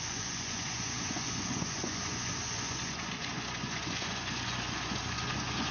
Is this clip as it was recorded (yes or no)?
no